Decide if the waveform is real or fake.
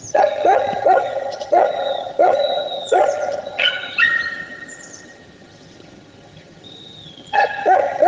fake